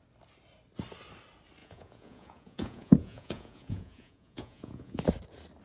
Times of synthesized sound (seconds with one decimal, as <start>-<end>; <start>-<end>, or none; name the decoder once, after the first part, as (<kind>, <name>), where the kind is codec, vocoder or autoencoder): 1.6-5.0 (vocoder, Vocos)